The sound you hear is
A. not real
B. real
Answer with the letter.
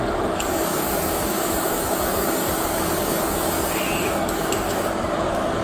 A